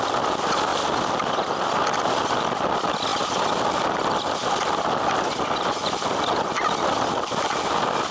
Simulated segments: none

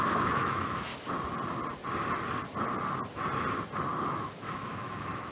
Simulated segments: 0.0-0.9 (autoencoder, DAC-VAE); 4.1-5.3

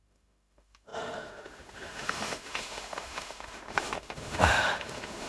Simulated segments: 0.0-5.3 (autoencoder, DAC-VAE)

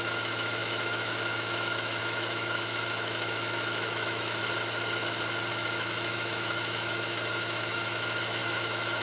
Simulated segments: 0.0-4.4 (autoencoder, DAC-VAE); 5.5-9.0

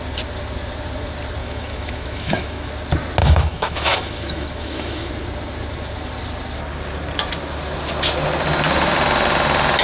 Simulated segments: 1.4-2.7 (autoencoder, DAC-VAE); 3.2-5.1

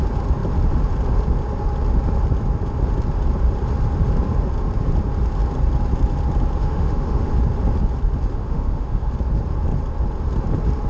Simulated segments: 6.6-7.3 (autoencoder, DAC-VAE); 8.3-9.1

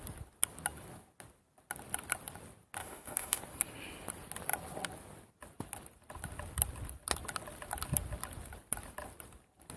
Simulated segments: 2.8-3.4 (autoencoder, DAC-VAE)

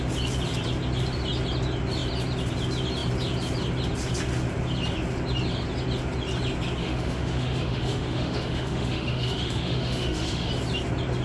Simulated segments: 6.8-10.5 (autoencoder, DAC-VAE)